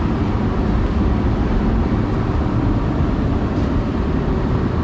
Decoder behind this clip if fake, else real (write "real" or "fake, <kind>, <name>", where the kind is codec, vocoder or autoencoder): fake, vocoder, BigVGAN v2